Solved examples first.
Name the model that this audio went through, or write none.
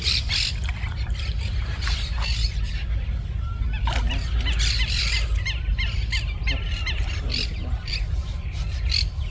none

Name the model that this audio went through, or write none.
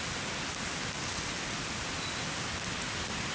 none